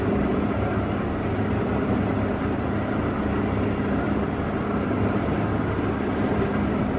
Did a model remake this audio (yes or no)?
no